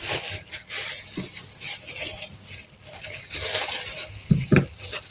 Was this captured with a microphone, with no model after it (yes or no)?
no